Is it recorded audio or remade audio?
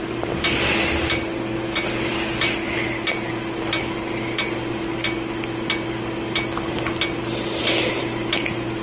recorded